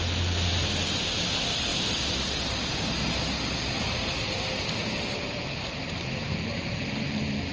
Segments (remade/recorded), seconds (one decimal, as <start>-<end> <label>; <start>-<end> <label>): 0.0-1.7 recorded; 1.7-2.4 remade; 2.4-4.8 recorded; 4.8-7.5 remade